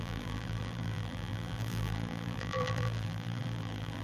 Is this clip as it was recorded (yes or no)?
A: no